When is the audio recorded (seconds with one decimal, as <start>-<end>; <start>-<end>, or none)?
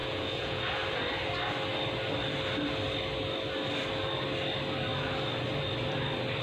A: 0.6-6.4